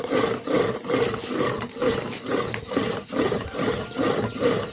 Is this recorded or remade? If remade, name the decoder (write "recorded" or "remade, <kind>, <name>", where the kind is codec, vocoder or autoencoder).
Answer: recorded